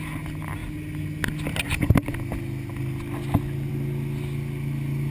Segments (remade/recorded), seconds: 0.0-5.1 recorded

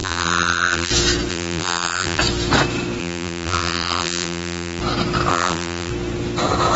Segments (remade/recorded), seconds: 0.0-0.9 remade; 0.9-1.3 recorded; 1.3-2.2 remade; 2.2-3.0 recorded; 3.0-4.8 remade; 4.8-5.3 recorded; 5.3-5.9 remade; 5.9-6.8 recorded

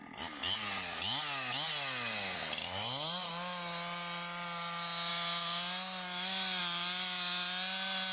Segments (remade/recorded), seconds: 0.0-2.4 recorded; 2.4-3.3 remade; 3.3-5.1 recorded; 5.1-6.6 remade; 6.6-8.1 recorded

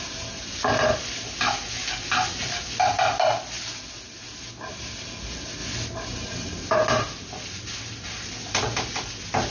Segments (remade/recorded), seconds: 0.0-9.5 recorded

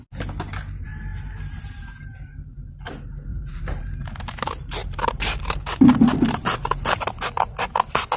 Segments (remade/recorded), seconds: 0.0-3.3 recorded; 3.3-4.0 remade; 4.0-4.8 recorded; 4.8-6.1 remade; 6.1-8.2 recorded